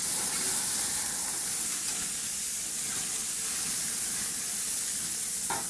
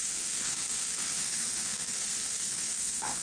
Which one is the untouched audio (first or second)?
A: first